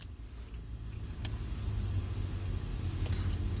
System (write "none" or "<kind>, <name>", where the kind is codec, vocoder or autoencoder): none